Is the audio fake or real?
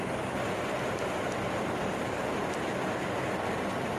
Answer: real